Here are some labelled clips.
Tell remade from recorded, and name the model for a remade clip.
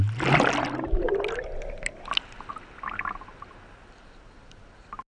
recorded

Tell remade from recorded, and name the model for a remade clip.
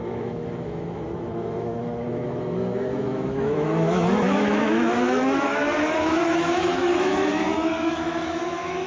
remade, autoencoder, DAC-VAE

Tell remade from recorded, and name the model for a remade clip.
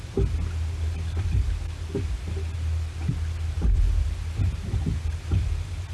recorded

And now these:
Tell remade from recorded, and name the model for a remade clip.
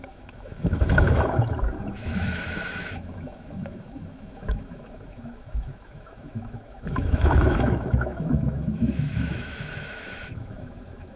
remade, autoencoder, DAC-VAE